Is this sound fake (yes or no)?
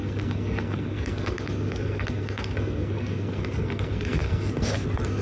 yes